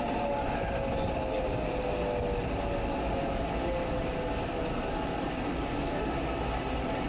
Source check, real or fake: real